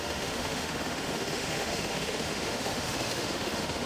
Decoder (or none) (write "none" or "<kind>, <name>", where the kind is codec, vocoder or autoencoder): autoencoder, DAC-VAE